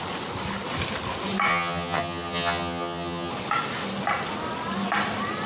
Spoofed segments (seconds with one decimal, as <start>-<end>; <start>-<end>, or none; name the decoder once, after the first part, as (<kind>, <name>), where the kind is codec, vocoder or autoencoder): 1.5-3.3 (vocoder, HiFi-GAN)